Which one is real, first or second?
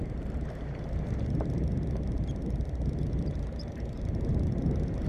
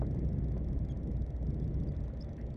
second